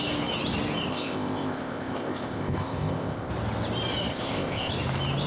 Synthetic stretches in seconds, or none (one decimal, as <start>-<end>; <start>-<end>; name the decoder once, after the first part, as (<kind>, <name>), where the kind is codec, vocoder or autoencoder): 0.9-3.3 (codec, ZipCodec); 4.1-4.7